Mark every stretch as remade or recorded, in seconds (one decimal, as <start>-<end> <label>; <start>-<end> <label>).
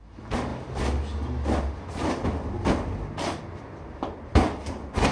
0.0-5.1 recorded